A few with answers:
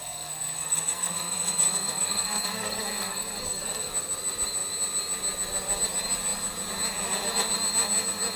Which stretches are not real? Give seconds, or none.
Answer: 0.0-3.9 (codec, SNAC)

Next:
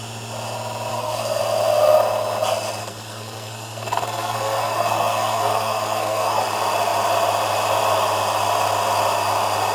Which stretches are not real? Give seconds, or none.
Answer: 0.9-1.4 (codec, SNAC); 2.8-6.4

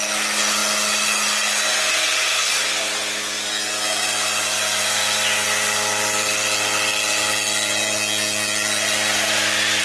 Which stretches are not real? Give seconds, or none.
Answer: none

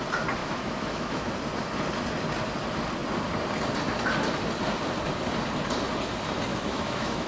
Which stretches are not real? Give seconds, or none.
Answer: 0.4-1.3 (autoencoder, DAC-VAE); 6.5-7.3

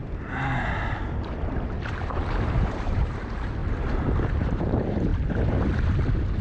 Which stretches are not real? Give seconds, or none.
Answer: 2.2-3.6 (vocoder, BigVGAN v2); 4.4-5.1

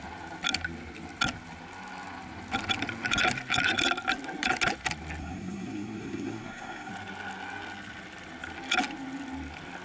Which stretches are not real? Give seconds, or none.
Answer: 5.2-6.9 (codec, SNAC)